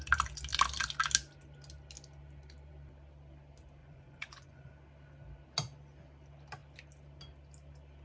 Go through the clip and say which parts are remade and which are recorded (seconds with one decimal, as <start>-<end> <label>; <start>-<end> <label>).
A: 0.0-3.8 recorded; 3.8-4.7 remade; 4.7-8.0 recorded